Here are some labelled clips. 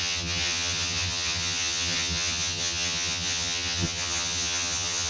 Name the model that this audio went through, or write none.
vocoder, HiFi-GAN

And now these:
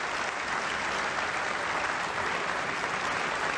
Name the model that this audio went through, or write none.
none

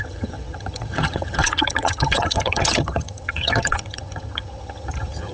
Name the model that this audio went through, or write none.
vocoder, HiFi-GAN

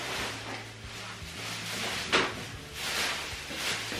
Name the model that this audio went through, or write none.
none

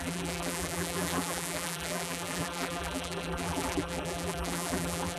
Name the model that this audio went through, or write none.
vocoder, BigVGAN v2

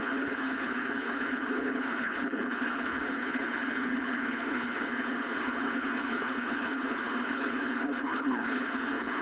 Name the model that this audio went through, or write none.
codec, HILCodec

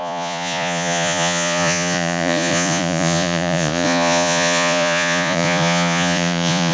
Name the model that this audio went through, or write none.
vocoder, Vocos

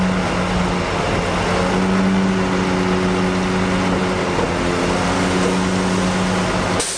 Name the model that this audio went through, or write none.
none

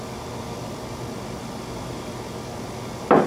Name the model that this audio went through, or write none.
none